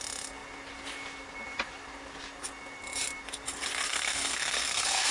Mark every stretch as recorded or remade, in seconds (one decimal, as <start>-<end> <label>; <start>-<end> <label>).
0.0-3.9 recorded; 3.9-5.1 remade